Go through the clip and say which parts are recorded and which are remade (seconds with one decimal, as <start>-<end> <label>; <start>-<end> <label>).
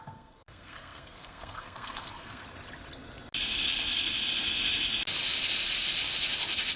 0.0-2.4 remade; 2.4-6.8 recorded